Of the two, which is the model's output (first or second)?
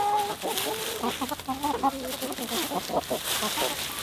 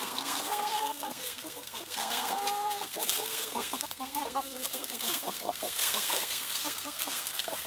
second